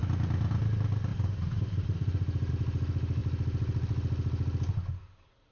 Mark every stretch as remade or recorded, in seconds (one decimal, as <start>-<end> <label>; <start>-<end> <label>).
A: 0.0-1.1 recorded; 1.1-2.5 remade; 2.5-5.5 recorded